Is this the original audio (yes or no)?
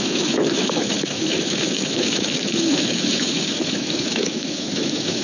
no